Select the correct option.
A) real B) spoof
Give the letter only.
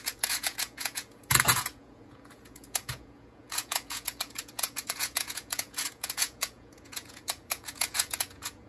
B